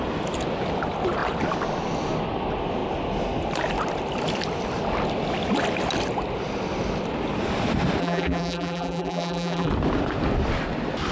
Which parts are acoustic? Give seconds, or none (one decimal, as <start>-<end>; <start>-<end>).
0.0-8.0; 9.7-11.1